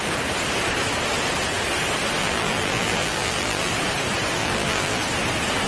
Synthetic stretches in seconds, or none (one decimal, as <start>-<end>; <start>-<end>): 2.2-3.7; 4.4-5.0